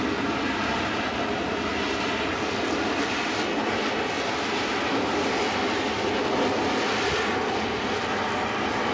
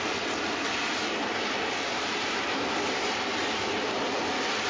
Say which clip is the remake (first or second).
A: second